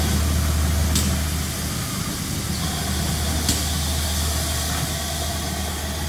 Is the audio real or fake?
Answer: real